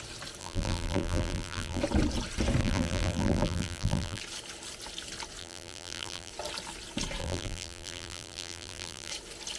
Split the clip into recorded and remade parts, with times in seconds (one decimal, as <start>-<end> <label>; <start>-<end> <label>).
0.0-0.4 recorded; 0.4-1.8 remade; 1.8-2.6 recorded; 2.6-4.2 remade; 4.2-5.4 recorded; 5.4-6.3 remade; 6.3-7.2 recorded; 7.2-9.1 remade; 9.1-9.6 recorded